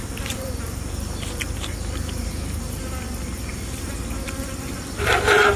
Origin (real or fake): fake